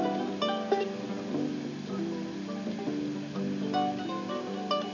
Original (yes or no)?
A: yes